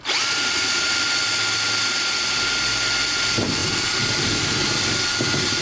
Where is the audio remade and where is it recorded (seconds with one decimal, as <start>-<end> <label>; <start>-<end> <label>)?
0.0-3.6 recorded; 3.6-5.6 remade